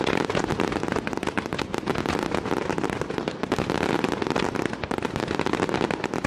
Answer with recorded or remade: recorded